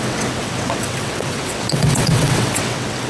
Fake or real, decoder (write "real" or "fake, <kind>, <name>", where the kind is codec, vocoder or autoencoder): fake, vocoder, WaveNeXt